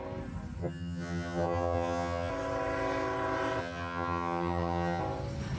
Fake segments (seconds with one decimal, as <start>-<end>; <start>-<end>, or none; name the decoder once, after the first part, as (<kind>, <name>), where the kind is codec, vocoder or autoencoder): 0.6-2.3 (vocoder, HiFi-GAN); 3.6-5.0